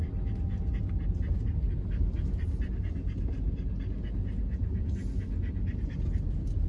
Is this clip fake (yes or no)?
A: no